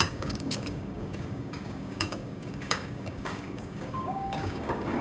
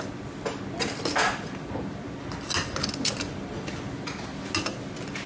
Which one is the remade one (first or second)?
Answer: first